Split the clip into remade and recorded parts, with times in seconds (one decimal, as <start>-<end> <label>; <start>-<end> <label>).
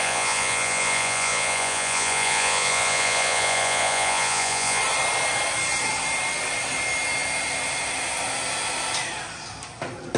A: 0.0-4.8 remade; 4.8-10.2 recorded